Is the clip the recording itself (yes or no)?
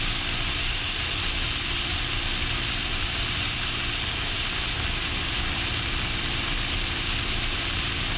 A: yes